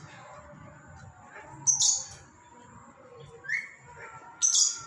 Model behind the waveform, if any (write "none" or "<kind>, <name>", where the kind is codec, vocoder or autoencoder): none